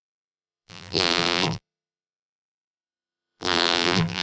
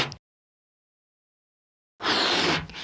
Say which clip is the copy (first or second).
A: first